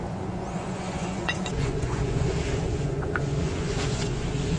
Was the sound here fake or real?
fake